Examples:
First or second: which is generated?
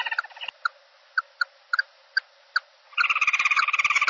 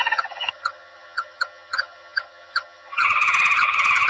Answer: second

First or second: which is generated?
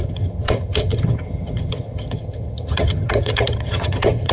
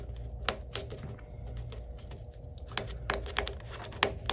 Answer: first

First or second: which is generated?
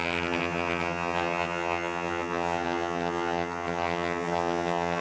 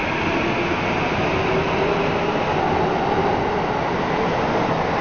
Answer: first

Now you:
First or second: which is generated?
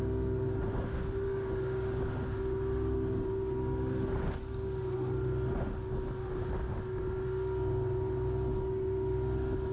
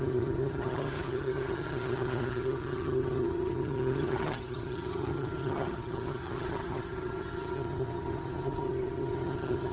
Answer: second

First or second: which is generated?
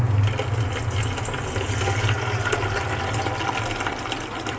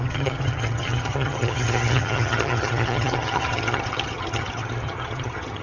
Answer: second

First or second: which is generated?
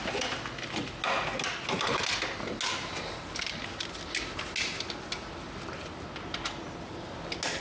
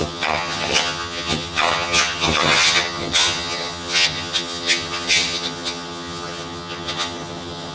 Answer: second